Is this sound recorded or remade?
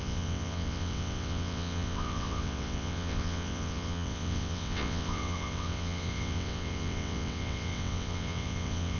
remade